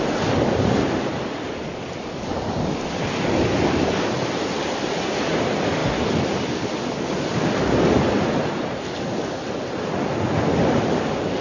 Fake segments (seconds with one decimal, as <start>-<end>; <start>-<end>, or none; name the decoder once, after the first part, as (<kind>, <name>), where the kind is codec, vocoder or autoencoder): none